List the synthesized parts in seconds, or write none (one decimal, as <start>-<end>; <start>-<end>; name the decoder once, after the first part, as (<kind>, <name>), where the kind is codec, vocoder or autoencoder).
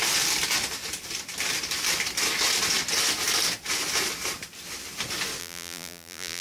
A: 5.4-6.4 (vocoder, BigVGAN v2)